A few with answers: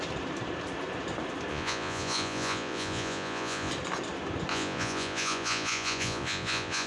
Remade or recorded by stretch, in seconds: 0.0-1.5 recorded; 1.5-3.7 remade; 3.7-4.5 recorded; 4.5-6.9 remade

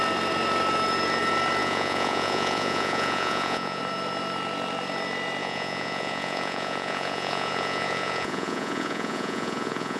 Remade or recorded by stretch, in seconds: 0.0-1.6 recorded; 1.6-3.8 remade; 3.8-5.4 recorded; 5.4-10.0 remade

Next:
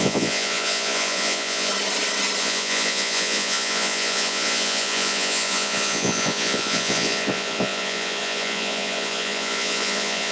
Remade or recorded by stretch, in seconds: 0.0-1.7 remade; 1.7-2.4 recorded; 2.4-10.3 remade

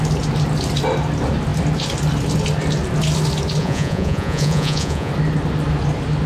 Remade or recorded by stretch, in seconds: 0.0-3.6 recorded; 3.6-5.1 remade; 5.1-6.3 recorded

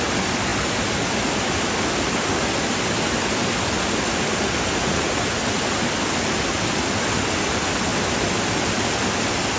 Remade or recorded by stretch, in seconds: 0.0-4.8 recorded; 4.8-5.4 remade; 5.4-9.6 recorded

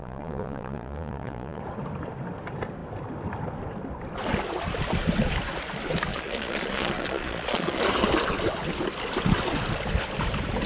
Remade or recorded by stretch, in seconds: 0.0-1.6 remade; 1.6-6.1 recorded; 6.1-7.8 remade; 7.8-10.7 recorded